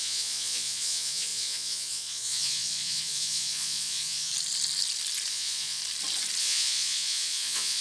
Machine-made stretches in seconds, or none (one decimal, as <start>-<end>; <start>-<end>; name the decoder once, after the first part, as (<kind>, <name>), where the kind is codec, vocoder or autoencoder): 0.0-4.3 (vocoder, Vocos); 5.3-5.8; 6.4-7.8